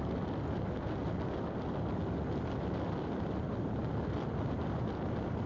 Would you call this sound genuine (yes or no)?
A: yes